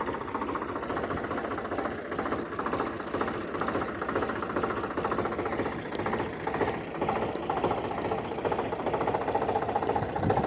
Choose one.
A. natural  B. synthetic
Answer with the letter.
A